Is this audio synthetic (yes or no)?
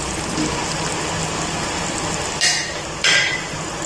no